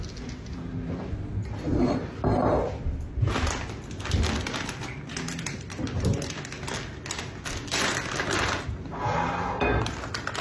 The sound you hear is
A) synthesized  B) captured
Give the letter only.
B